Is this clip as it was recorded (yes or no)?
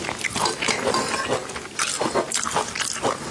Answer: yes